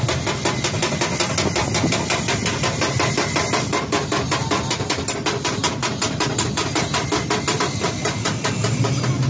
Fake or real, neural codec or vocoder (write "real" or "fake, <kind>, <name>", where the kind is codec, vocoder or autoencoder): real